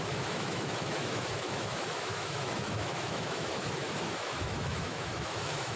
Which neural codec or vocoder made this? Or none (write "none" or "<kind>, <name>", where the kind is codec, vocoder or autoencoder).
autoencoder, DAC-VAE